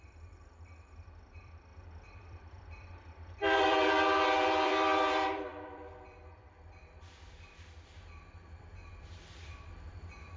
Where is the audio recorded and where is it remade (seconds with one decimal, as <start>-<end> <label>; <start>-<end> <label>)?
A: 0.0-10.4 remade